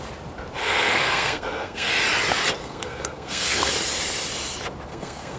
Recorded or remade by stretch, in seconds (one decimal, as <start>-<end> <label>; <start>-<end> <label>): 0.0-0.6 recorded; 0.6-1.9 remade; 1.9-2.6 recorded; 2.6-3.7 remade; 3.7-4.9 recorded; 4.9-5.4 remade